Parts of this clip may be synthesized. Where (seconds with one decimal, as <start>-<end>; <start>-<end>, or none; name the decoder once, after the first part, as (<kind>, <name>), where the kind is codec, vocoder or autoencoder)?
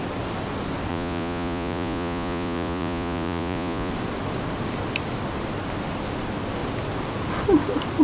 0.9-3.9 (vocoder, Vocos)